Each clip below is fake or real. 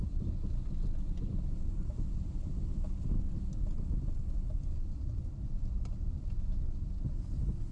real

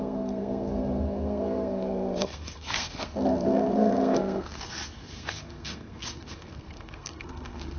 fake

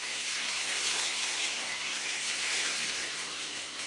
fake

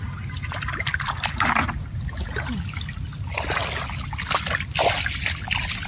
real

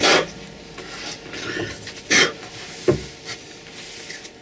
real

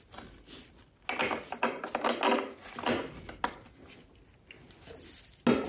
real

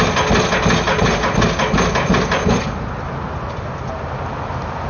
real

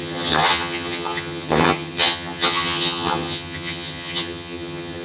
fake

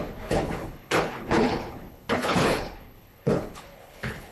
fake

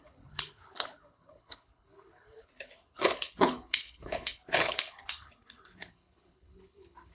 fake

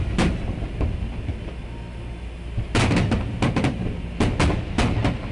real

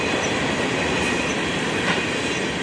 real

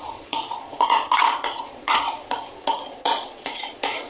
fake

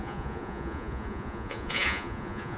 fake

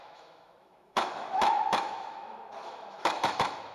fake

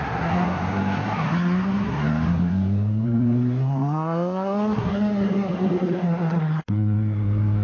fake